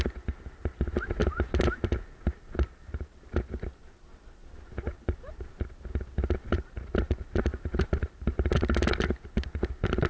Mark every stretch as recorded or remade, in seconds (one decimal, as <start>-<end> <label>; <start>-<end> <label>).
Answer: 0.0-1.2 recorded; 1.2-3.3 remade; 3.3-6.5 recorded; 6.5-8.5 remade; 8.5-10.1 recorded